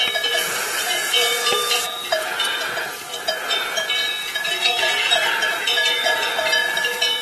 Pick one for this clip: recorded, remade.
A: remade